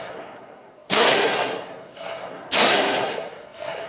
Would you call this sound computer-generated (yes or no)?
yes